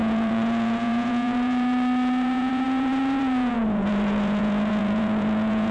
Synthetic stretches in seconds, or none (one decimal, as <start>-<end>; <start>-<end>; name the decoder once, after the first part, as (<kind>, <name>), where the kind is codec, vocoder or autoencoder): 0.0-5.7 (vocoder, Vocos)